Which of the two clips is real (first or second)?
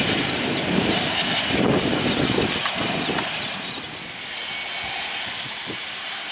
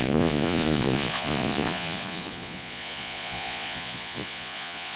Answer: first